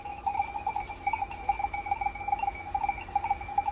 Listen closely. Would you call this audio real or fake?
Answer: fake